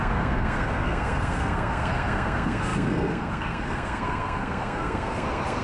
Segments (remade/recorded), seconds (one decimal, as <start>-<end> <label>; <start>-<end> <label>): 0.0-5.6 remade